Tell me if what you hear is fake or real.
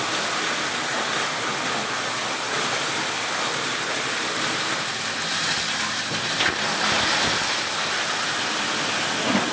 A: real